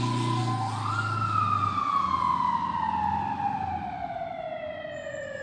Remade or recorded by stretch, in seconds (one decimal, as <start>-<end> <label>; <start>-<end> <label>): 0.0-5.4 recorded